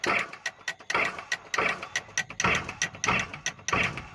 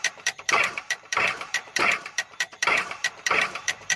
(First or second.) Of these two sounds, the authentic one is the first